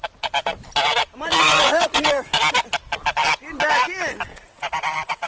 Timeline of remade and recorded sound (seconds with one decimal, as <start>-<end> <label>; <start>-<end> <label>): 0.0-1.3 recorded; 1.3-2.3 remade; 2.3-4.3 recorded; 4.3-5.3 remade

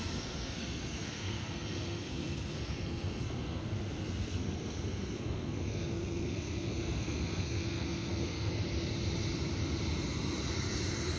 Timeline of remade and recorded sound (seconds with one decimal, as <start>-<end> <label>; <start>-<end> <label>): 0.0-8.6 remade; 8.6-11.2 recorded

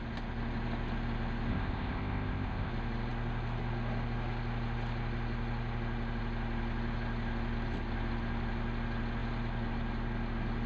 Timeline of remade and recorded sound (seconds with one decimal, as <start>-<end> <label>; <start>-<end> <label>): 0.0-1.5 recorded; 1.5-2.7 remade; 2.7-10.7 recorded